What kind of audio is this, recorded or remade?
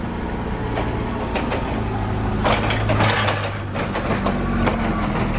recorded